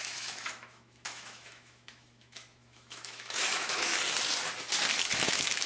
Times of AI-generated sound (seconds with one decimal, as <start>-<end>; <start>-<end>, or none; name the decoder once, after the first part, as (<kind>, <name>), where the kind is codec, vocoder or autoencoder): 0.0-3.9 (autoencoder, DAC-VAE); 5.0-5.7